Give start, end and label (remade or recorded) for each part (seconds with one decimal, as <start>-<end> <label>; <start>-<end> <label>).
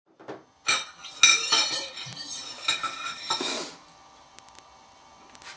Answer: 0.0-5.6 recorded